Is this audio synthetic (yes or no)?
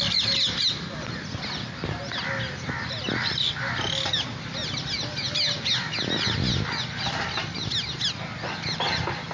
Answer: no